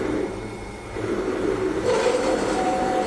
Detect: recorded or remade remade